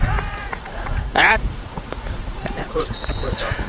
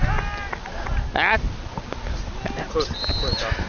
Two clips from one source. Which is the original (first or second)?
second